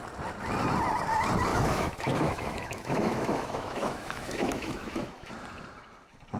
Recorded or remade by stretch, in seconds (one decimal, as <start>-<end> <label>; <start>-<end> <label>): 0.0-1.5 recorded; 1.5-5.3 remade; 5.3-6.4 recorded